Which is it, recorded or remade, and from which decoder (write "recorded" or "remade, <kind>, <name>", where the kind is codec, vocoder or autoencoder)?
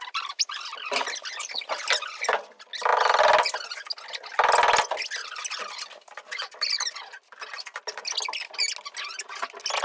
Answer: recorded